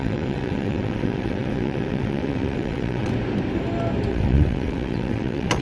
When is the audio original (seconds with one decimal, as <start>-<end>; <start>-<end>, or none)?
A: 3.1-4.1